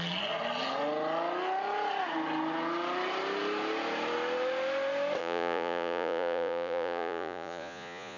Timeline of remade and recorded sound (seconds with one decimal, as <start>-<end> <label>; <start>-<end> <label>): 0.0-5.2 recorded; 5.2-8.2 remade